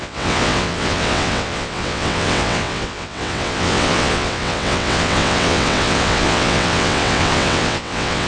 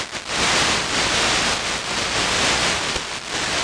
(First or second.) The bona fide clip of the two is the second